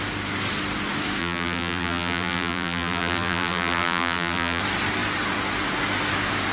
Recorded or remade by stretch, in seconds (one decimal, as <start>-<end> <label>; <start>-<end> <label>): 0.0-1.2 recorded; 1.2-4.6 remade; 4.6-6.5 recorded

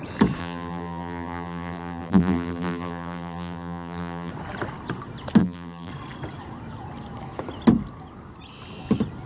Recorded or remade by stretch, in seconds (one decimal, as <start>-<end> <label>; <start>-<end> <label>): 0.0-0.4 recorded; 0.4-4.3 remade; 4.3-5.4 recorded; 5.4-5.9 remade; 5.9-9.3 recorded

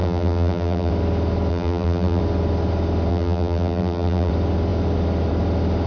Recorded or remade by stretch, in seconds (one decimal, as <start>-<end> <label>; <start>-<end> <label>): 0.0-0.9 remade; 0.9-1.5 recorded; 1.5-2.2 remade; 2.2-3.1 recorded; 3.1-4.3 remade; 4.3-5.9 recorded

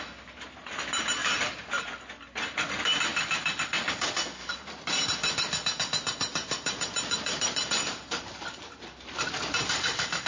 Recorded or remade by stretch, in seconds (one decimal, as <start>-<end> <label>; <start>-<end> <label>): 0.0-1.2 recorded; 1.2-1.9 remade; 1.9-3.1 recorded; 3.1-3.9 remade; 3.9-4.4 recorded; 4.4-4.9 remade; 4.9-6.4 recorded; 6.4-10.3 remade

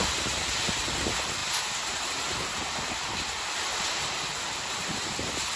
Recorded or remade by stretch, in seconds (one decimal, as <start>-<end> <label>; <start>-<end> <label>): 0.0-1.4 recorded; 1.4-2.9 remade; 2.9-3.7 recorded; 3.7-4.4 remade; 4.4-5.6 recorded

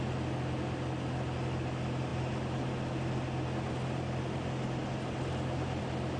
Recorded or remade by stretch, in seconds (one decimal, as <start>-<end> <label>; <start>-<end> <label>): 0.0-6.2 recorded

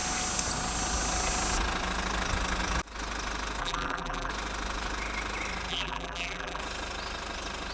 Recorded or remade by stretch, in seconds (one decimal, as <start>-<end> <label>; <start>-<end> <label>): 0.0-3.6 recorded; 3.6-4.3 remade; 4.3-5.7 recorded; 5.7-6.6 remade; 6.6-7.7 recorded

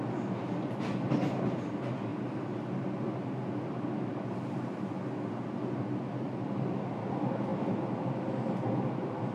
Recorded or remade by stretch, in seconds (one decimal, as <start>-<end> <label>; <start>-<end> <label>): 0.0-9.3 recorded